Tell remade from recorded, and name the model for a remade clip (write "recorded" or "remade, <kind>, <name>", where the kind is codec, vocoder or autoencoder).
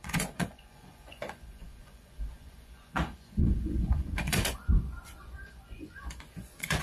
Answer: remade, vocoder, Vocos